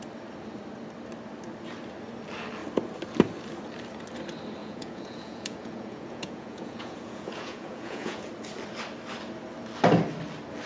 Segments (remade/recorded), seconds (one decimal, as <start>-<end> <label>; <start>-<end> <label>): 0.0-4.6 recorded; 4.6-8.3 remade; 8.3-10.7 recorded